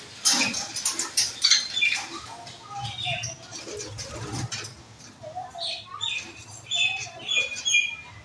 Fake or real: real